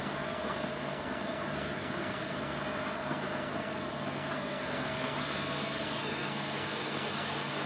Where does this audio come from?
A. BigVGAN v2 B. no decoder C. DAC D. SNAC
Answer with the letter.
D